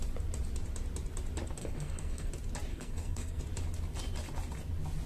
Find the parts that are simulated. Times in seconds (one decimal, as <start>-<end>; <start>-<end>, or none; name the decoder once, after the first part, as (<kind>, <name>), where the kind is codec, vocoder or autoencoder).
1.6-2.3 (codec, SNAC); 2.7-3.4